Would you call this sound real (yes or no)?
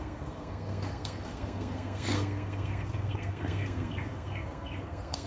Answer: no